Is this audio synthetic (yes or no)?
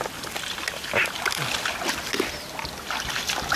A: no